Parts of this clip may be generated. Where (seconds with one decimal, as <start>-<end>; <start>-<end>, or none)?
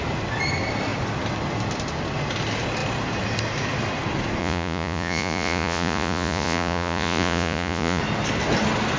4.4-8.0